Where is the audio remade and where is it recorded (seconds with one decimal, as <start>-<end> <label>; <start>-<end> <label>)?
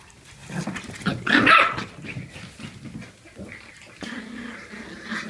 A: 0.0-5.3 recorded